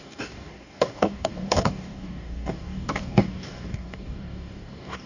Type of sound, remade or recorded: remade